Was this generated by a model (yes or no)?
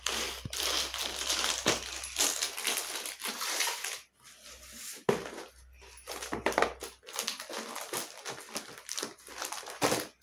no